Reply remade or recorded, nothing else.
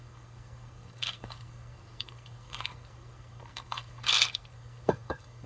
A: remade